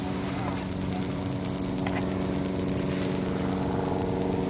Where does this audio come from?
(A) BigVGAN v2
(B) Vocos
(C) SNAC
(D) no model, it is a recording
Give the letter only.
D